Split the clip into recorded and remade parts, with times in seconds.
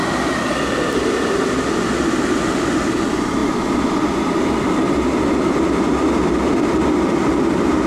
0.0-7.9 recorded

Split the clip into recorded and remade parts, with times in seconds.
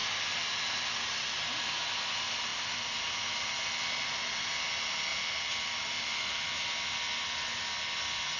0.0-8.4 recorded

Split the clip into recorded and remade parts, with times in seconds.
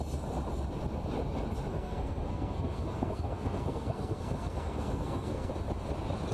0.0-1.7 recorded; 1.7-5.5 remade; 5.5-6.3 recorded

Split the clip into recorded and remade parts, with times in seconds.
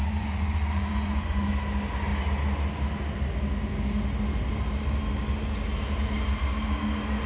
0.0-1.5 remade; 1.5-7.3 recorded